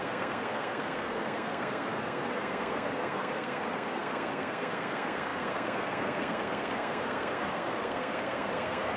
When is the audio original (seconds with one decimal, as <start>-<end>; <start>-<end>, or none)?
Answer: none